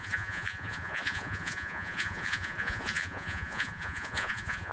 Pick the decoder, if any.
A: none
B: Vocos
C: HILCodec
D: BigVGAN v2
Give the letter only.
B